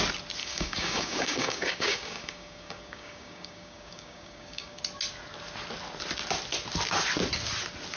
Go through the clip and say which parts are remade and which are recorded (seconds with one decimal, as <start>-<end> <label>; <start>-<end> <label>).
0.0-0.4 recorded; 0.4-4.8 remade; 4.8-8.0 recorded